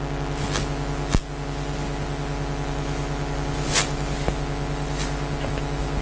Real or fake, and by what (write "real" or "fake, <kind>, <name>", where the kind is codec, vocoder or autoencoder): real